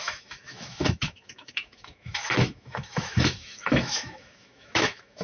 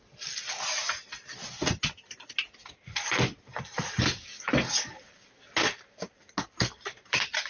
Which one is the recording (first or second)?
second